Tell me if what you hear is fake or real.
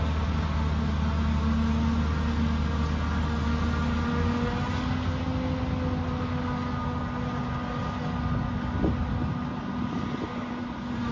real